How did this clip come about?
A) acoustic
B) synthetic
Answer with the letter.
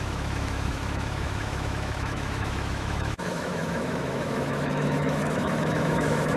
B